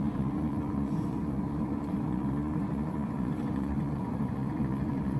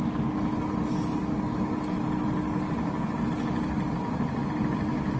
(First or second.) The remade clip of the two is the first